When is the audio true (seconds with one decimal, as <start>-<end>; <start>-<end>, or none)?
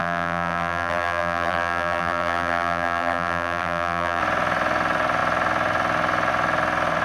4.2-7.0